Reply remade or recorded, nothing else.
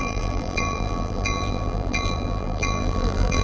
remade